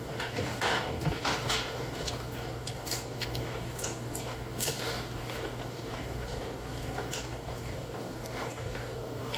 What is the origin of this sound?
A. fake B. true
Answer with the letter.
A